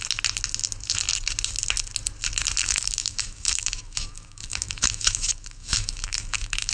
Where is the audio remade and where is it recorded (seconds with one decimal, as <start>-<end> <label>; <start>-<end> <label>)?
0.0-2.6 recorded; 2.6-6.7 remade